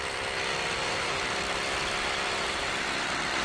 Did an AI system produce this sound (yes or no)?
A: no